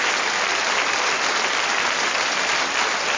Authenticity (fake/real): real